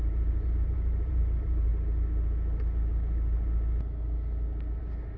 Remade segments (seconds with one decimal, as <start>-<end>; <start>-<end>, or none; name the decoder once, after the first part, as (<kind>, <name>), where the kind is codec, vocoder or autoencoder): 0.0-1.7 (vocoder, BigVGAN v2); 4.8-5.2